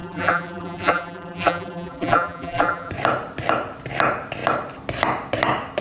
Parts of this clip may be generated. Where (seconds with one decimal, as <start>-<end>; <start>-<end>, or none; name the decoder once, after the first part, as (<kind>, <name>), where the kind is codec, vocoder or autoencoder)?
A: 0.0-2.9 (vocoder, BigVGAN v2)